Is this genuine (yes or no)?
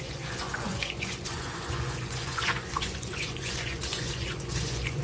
no